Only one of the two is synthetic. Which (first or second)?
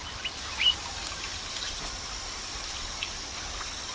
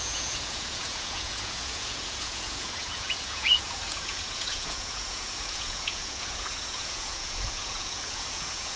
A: second